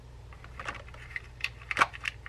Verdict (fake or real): fake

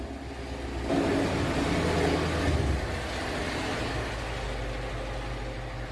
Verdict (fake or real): real